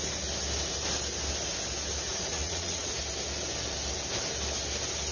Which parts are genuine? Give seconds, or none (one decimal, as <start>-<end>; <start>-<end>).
0.0-2.1; 3.0-5.1